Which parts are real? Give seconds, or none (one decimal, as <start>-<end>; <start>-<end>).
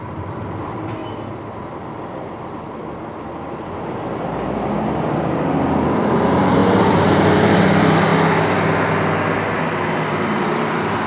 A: 1.0-5.5; 6.6-7.2; 8.1-10.1